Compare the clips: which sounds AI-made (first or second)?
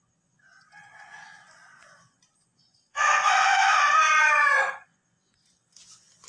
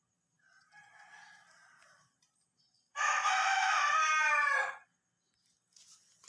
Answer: first